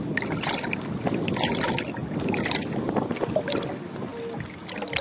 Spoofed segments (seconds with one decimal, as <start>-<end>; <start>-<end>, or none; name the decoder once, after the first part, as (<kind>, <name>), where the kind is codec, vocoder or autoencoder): none